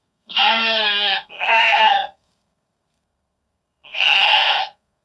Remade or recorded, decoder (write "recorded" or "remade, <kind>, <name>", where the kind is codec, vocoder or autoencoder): remade, codec, SNAC